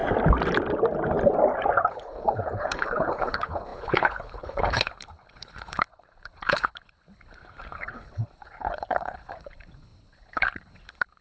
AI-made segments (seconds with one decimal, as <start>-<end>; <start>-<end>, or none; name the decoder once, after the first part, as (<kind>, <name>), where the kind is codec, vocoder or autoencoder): 1.9-11.2 (codec, HILCodec)